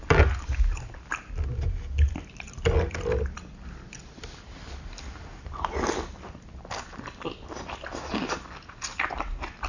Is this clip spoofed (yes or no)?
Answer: no